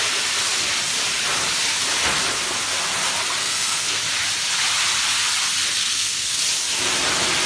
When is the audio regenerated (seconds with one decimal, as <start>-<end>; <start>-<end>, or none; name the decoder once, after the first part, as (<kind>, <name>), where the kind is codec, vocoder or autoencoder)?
3.4-4.0 (codec, SNAC); 5.8-6.4